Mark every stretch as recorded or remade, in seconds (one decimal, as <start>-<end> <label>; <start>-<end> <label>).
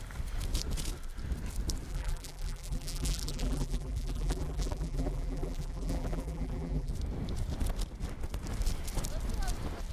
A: 0.0-1.9 recorded; 1.9-6.9 remade; 6.9-9.9 recorded